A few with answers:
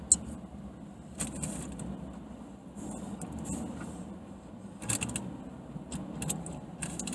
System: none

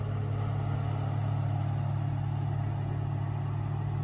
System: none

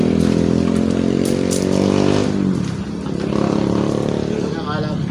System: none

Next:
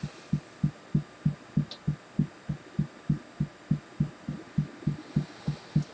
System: none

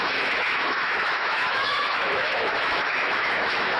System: autoencoder, DAC-VAE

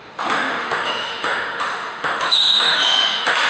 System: autoencoder, DAC-VAE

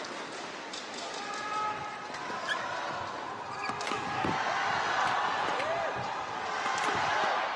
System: none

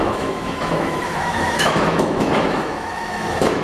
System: autoencoder, DAC-VAE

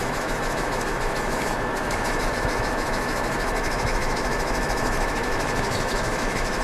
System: autoencoder, DAC-VAE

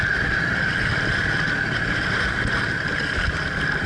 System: none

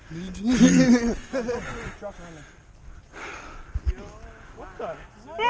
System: none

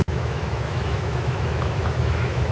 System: autoencoder, DAC-VAE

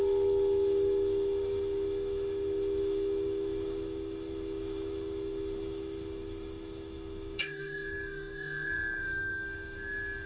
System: autoencoder, DAC-VAE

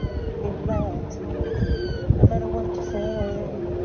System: none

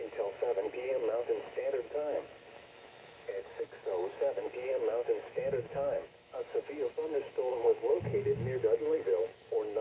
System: autoencoder, DAC-VAE